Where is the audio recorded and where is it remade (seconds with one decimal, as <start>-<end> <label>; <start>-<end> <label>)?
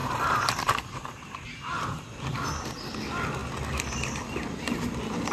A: 0.0-1.2 remade; 1.2-5.3 recorded